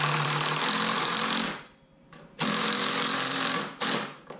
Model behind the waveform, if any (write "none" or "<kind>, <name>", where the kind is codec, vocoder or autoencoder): vocoder, BigVGAN v2